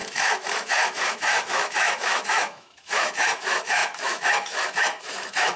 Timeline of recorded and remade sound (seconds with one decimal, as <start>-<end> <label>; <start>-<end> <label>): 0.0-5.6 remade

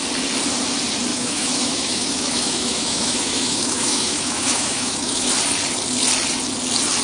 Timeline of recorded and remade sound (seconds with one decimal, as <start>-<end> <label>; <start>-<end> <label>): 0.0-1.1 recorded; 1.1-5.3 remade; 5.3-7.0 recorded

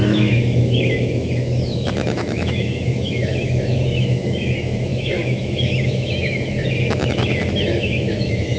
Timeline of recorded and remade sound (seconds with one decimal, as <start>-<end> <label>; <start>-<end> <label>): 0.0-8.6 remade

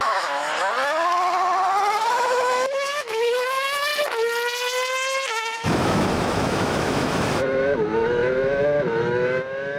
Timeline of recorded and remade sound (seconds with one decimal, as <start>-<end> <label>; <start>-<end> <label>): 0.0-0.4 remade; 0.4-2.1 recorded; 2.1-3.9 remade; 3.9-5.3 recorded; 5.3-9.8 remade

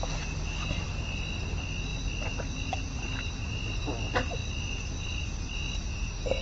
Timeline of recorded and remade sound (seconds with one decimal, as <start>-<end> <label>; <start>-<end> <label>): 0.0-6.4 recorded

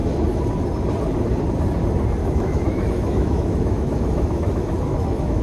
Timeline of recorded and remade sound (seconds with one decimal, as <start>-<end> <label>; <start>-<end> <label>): 0.0-2.2 recorded; 2.2-5.4 remade

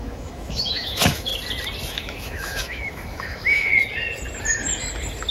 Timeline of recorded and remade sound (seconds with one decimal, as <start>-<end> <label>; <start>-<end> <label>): 0.0-1.3 remade; 1.3-1.9 recorded; 1.9-3.7 remade; 3.7-5.3 recorded